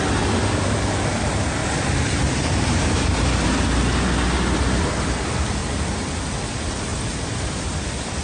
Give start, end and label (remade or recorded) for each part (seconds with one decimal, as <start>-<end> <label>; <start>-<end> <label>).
0.0-1.6 recorded; 1.6-3.2 remade; 3.2-8.2 recorded